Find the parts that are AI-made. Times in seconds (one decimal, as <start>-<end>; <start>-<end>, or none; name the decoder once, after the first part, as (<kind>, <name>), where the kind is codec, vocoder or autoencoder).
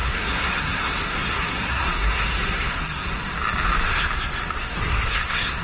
0.0-3.2 (codec, SNAC); 4.6-5.6